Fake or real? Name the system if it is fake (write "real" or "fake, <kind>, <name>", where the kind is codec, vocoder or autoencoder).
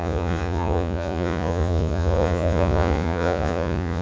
fake, vocoder, Vocos